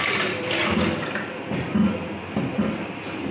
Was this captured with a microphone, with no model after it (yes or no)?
yes